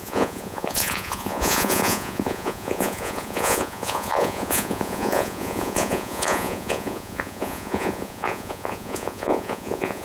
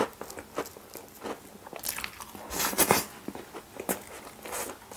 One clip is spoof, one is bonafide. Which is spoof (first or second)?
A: first